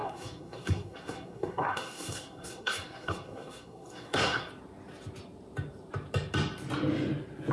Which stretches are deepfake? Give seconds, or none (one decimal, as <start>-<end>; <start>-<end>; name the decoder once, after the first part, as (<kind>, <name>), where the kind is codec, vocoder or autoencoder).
0.0-4.5 (codec, SNAC)